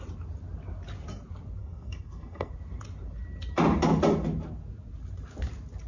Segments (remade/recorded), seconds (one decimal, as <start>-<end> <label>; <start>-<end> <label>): 0.0-1.6 recorded; 1.6-2.5 remade; 2.5-5.9 recorded